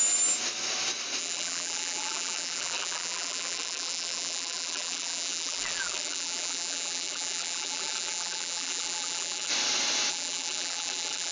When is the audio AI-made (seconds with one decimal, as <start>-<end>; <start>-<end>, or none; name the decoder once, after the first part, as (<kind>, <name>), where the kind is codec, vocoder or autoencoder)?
1.2-9.5 (vocoder, BigVGAN v2); 10.1-11.3